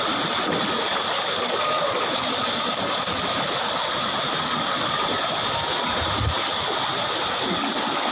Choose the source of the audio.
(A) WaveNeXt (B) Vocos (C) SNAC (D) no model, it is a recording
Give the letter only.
D